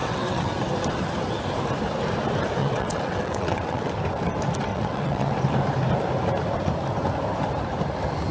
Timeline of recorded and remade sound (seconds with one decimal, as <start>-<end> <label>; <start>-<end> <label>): 0.0-0.5 remade; 0.5-2.6 recorded; 2.6-3.9 remade; 3.9-4.7 recorded; 4.7-5.3 remade; 5.3-8.3 recorded